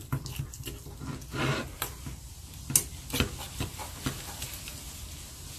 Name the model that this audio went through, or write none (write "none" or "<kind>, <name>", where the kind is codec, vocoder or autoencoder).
none